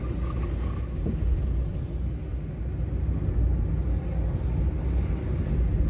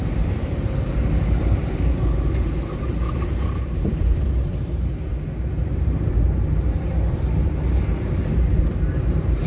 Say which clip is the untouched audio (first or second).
first